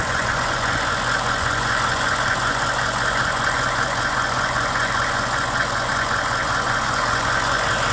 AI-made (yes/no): yes